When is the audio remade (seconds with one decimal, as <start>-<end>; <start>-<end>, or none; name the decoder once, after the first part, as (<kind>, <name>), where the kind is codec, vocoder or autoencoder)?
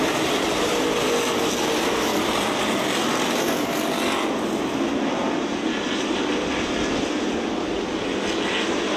2.1-6.2 (vocoder, BigVGAN v2)